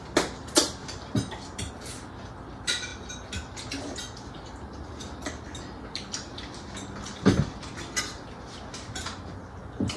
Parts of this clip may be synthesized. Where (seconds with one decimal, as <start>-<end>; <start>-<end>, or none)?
none